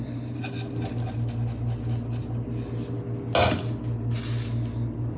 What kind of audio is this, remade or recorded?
recorded